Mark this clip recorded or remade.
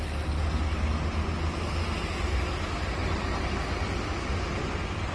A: recorded